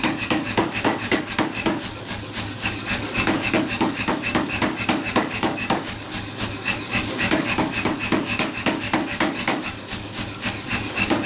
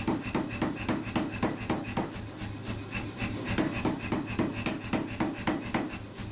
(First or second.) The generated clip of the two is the first